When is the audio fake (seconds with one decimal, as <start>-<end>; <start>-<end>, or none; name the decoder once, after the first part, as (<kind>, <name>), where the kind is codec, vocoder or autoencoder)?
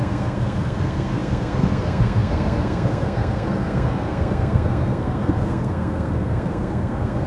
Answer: 0.0-7.3 (codec, SNAC)